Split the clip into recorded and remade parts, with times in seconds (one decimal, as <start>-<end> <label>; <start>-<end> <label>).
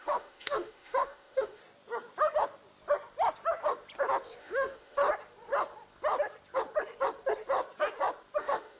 0.0-1.6 remade; 1.6-4.4 recorded; 4.4-5.0 remade; 5.0-8.4 recorded; 8.4-8.8 remade